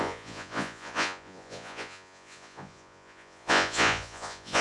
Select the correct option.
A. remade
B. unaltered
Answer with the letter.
A